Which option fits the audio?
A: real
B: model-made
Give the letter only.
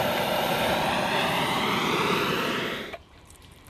B